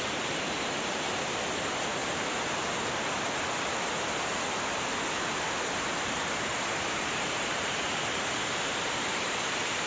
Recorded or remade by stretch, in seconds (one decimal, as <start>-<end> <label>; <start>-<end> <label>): 0.0-2.0 remade; 2.0-6.1 recorded; 6.1-9.9 remade